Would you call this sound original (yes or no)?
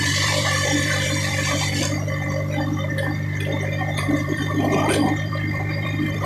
no